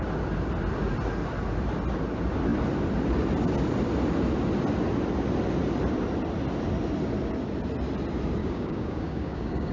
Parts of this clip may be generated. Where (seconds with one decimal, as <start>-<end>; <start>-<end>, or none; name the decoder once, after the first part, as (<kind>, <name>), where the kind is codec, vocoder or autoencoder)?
8.4-9.7 (codec, DAC)